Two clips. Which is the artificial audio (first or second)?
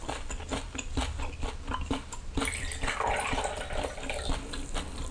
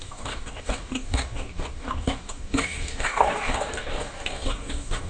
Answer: second